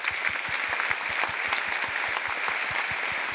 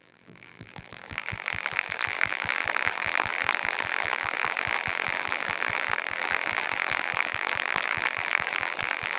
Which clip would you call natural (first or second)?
first